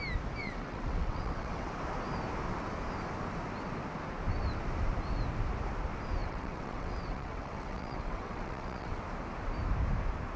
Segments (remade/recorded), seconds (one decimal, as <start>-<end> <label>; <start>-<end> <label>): 0.0-0.4 recorded; 0.4-1.7 remade; 1.7-6.2 recorded; 6.2-9.0 remade; 9.0-10.4 recorded